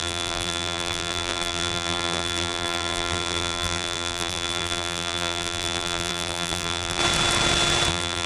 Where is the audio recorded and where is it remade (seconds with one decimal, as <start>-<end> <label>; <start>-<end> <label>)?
0.0-7.0 remade; 7.0-7.9 recorded; 7.9-8.3 remade